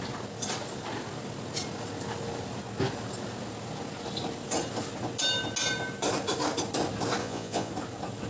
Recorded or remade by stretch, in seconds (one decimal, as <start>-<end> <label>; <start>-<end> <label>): 0.0-7.2 recorded; 7.2-7.7 remade; 7.7-8.3 recorded